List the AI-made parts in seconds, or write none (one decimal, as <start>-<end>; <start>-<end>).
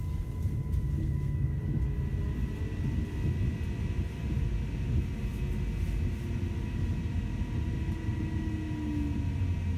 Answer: 1.0-1.6